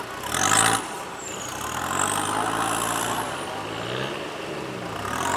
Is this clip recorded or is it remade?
recorded